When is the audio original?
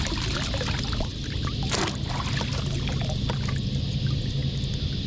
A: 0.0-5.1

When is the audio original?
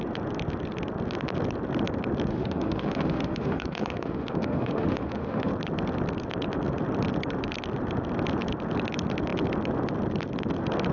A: 0.0-2.3; 5.5-10.9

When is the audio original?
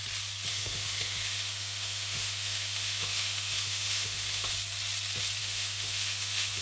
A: 0.0-0.5; 4.5-5.4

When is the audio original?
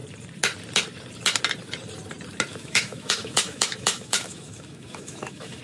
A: 0.0-2.5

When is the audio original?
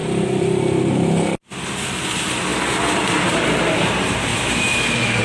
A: 0.0-4.3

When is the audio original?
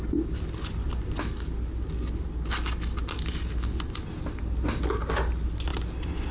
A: 0.0-6.3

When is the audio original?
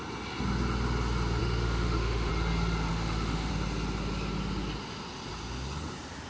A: 0.0-1.4; 2.3-2.9; 3.5-6.3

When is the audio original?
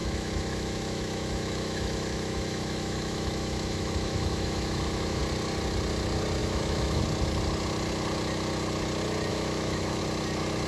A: 5.2-6.4; 7.0-9.3; 10.0-10.7